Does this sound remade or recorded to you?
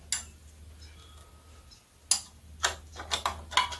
recorded